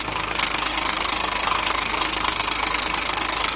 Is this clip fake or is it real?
fake